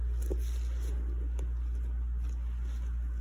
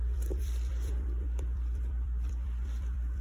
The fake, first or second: second